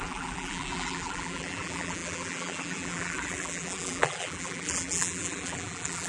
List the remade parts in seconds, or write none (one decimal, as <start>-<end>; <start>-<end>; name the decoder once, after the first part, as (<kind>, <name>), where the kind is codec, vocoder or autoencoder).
0.0-6.1 (vocoder, BigVGAN v2)